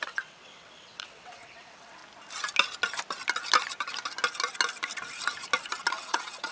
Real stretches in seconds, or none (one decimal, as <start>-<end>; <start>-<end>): 2.0-5.9